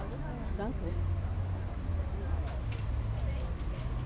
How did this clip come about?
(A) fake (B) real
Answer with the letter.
B